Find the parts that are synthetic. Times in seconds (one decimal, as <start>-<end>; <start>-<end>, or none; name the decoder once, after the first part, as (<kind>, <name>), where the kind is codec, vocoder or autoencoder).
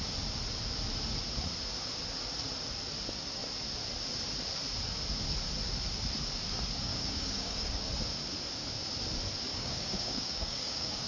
6.9-7.7 (codec, DAC); 9.5-11.1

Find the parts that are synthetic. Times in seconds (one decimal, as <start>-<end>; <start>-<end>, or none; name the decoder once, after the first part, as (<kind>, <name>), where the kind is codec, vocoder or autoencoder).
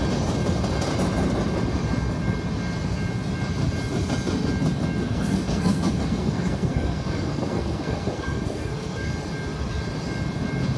5.0-9.1 (codec, SNAC)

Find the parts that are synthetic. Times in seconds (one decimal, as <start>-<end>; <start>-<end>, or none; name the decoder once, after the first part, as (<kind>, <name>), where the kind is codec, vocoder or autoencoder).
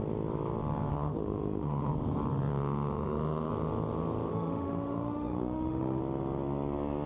0.9-1.9 (autoencoder, DAC-VAE); 2.5-3.5; 4.3-6.0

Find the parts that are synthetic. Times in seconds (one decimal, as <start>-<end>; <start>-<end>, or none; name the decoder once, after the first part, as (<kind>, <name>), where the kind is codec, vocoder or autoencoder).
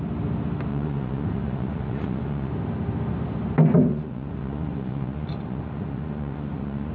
0.7-2.5 (vocoder, Vocos); 3.9-6.9